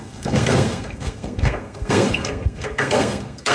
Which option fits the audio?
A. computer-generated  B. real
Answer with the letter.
A